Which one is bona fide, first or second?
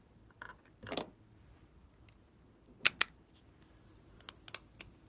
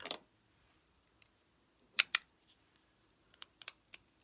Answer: first